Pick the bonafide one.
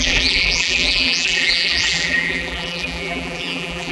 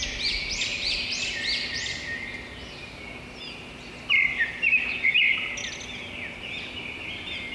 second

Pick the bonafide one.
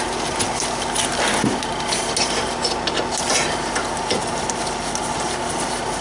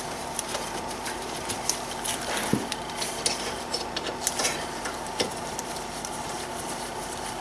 first